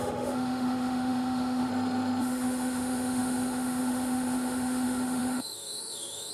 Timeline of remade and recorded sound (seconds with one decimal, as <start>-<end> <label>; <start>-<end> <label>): 0.0-1.7 remade; 1.7-2.2 recorded; 2.2-6.3 remade